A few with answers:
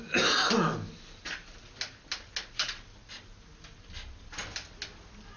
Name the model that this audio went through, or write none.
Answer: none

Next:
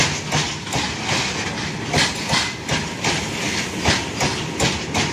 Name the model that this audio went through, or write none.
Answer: none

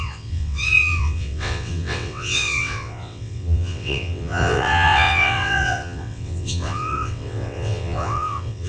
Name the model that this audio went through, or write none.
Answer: vocoder, WaveNeXt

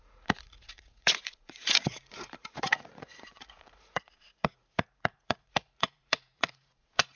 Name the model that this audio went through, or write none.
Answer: vocoder, Vocos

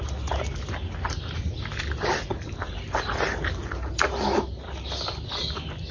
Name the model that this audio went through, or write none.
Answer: none